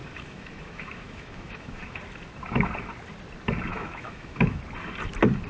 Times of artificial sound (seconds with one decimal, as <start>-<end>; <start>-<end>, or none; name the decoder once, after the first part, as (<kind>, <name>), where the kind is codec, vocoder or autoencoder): 0.0-2.0 (autoencoder, DAC-VAE); 3.7-4.6